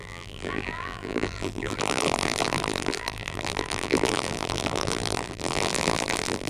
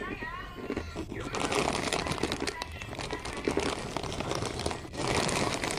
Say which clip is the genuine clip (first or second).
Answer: second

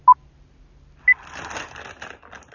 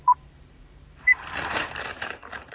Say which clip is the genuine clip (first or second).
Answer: first